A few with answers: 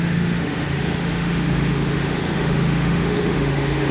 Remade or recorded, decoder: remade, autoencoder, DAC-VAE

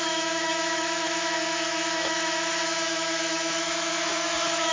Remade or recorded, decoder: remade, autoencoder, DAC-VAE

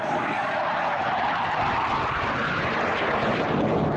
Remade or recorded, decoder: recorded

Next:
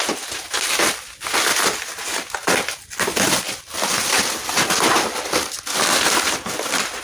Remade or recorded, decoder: recorded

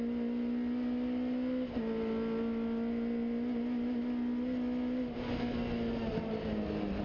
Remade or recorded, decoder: recorded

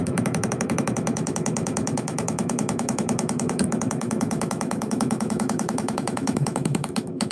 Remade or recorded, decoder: remade, autoencoder, DAC-VAE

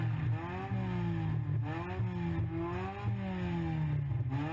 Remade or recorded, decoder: recorded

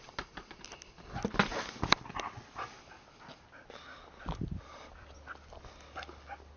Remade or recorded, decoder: recorded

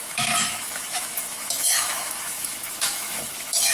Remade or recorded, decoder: remade, autoencoder, DAC-VAE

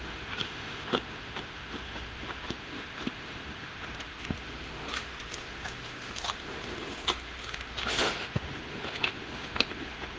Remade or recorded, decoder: remade, autoencoder, DAC-VAE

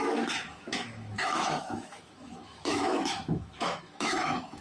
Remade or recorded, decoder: remade, autoencoder, DAC-VAE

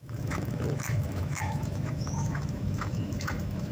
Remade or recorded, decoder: remade, autoencoder, DAC-VAE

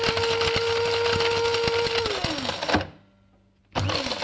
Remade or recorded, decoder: recorded